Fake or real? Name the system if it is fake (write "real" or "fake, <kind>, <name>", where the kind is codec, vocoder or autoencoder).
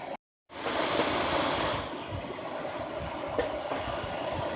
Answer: real